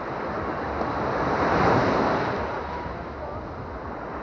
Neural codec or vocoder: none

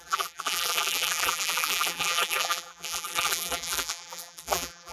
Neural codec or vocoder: vocoder, BigVGAN v2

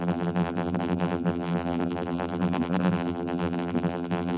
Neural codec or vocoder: vocoder, BigVGAN v2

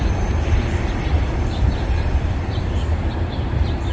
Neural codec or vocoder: vocoder, BigVGAN v2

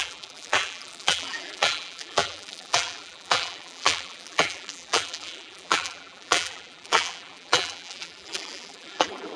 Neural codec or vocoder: vocoder, BigVGAN v2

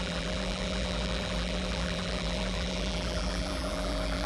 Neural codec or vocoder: vocoder, BigVGAN v2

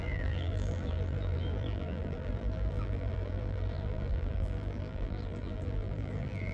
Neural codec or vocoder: vocoder, BigVGAN v2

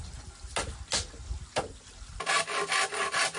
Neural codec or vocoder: none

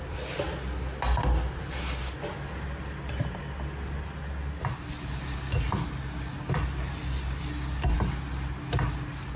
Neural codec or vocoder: none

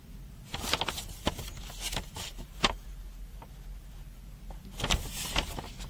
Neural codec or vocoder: none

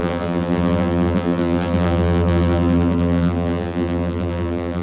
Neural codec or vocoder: vocoder, BigVGAN v2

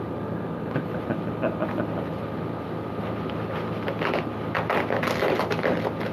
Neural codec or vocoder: none